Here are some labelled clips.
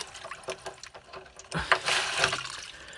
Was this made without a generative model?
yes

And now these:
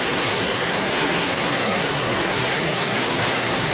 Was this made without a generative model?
no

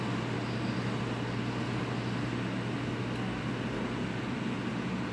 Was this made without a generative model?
yes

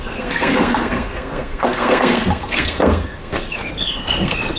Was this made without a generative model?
no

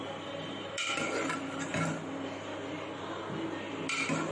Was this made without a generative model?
no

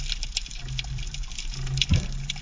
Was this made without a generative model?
yes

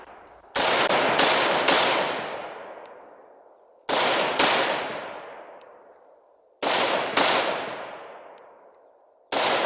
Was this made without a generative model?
yes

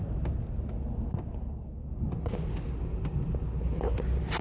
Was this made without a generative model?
yes